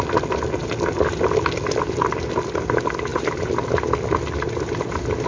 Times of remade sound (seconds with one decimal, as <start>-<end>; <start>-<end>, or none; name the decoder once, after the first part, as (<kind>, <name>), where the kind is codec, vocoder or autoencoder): none